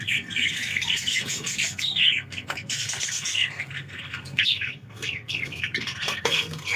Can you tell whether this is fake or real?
fake